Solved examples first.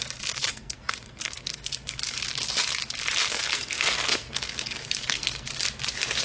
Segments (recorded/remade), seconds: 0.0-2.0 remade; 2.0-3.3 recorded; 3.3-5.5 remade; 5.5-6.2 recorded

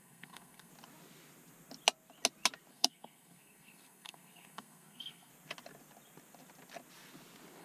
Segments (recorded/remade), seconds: 0.0-0.7 remade; 0.7-2.7 recorded; 2.7-5.3 remade; 5.3-7.6 recorded

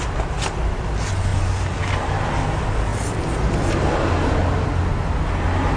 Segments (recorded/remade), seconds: 0.0-5.8 recorded

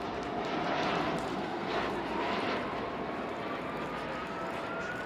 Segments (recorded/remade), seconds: 0.0-1.3 recorded; 1.3-1.9 remade; 1.9-5.1 recorded

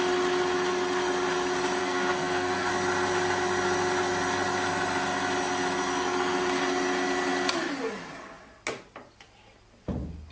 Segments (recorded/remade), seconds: 0.0-1.8 recorded; 1.8-2.7 remade; 2.7-10.3 recorded

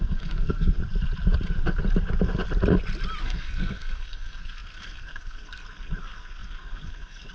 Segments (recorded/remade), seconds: 0.0-0.8 remade; 0.8-3.2 recorded; 3.2-7.3 remade